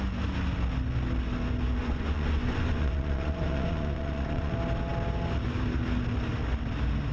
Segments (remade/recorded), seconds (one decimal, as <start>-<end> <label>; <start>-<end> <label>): 0.0-1.8 recorded; 1.8-4.5 remade; 4.5-7.1 recorded